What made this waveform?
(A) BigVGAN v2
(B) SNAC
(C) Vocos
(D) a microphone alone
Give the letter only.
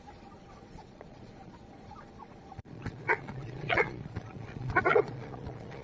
C